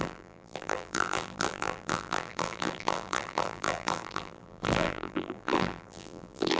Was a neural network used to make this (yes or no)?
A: yes